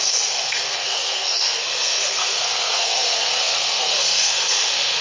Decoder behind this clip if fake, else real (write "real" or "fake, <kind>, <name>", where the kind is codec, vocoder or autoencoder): fake, codec, SNAC